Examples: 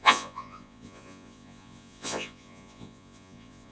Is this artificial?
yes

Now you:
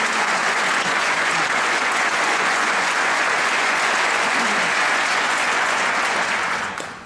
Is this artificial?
yes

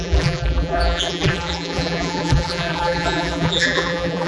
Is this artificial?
yes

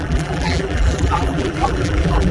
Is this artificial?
yes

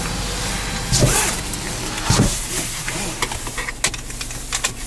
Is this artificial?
no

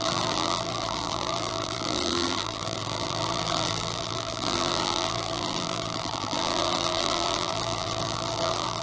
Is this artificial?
yes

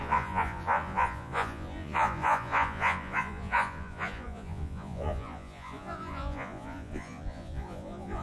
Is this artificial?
yes